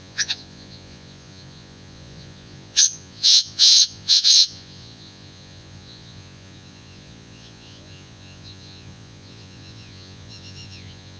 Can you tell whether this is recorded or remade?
remade